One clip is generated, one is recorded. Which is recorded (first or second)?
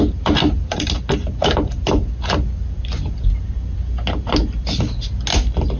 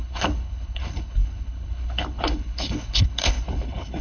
first